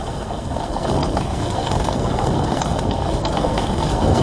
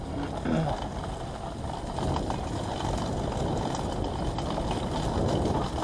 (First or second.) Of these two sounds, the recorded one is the second